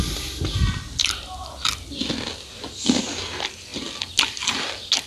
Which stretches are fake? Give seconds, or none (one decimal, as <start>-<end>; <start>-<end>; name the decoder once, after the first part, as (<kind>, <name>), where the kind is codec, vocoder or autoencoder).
none